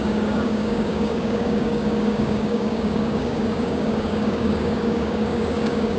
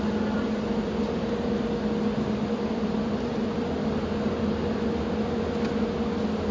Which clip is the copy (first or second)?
first